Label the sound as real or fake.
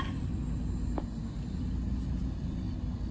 real